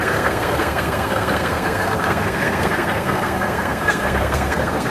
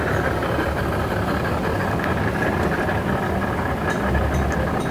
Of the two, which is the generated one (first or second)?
first